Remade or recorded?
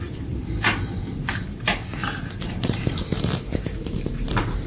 remade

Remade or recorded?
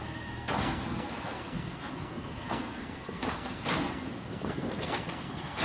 remade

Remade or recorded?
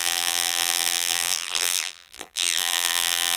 remade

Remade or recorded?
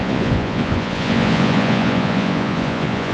remade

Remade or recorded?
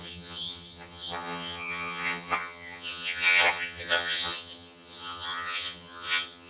remade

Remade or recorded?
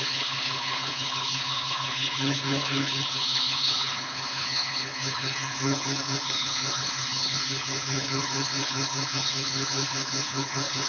remade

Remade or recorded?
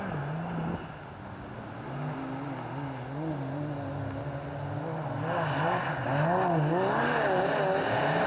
recorded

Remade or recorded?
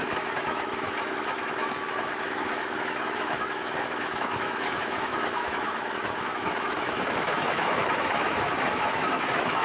remade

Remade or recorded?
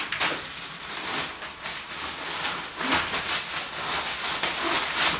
recorded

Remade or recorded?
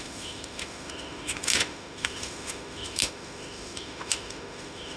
remade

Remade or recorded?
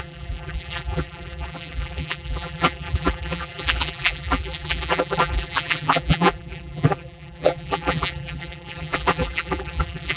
remade